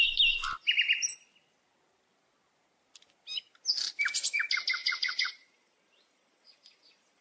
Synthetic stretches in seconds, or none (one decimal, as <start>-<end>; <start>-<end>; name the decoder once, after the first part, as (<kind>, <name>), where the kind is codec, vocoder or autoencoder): 4.8-7.2 (vocoder, Vocos)